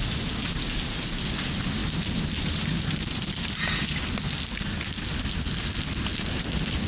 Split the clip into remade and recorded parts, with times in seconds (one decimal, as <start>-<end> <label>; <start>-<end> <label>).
0.0-1.8 recorded; 1.8-3.2 remade; 3.2-6.9 recorded